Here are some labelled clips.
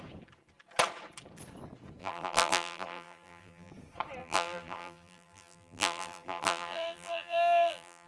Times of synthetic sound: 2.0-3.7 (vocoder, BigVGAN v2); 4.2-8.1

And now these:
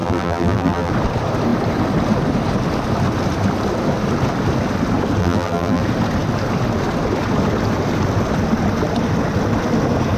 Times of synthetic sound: 0.0-0.9 (vocoder, BigVGAN v2); 5.2-5.8

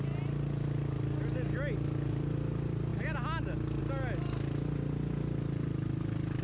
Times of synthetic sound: none